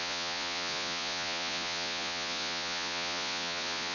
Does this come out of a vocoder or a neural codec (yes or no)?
yes